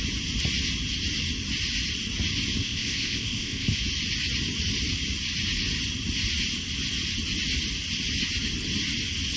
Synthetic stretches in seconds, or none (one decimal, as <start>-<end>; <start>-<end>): 2.6-3.8